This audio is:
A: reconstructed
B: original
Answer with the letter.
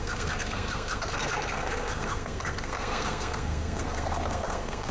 A